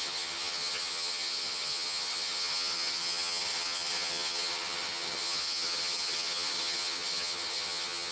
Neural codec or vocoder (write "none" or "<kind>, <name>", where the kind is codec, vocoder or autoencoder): vocoder, HiFi-GAN